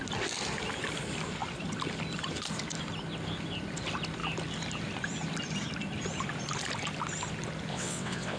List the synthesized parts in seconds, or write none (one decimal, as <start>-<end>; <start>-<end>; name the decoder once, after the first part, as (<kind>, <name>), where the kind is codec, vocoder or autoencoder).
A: 7.7-8.4 (vocoder, WaveNeXt)